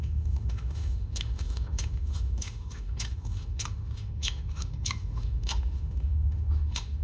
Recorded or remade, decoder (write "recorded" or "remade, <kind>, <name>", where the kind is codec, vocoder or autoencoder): remade, autoencoder, DAC-VAE